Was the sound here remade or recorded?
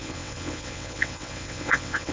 remade